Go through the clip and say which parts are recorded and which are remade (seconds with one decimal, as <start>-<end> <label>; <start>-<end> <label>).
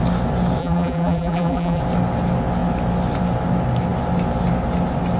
0.0-0.6 recorded; 0.6-1.8 remade; 1.8-5.2 recorded